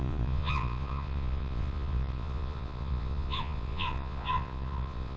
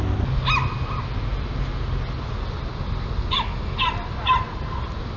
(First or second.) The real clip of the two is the second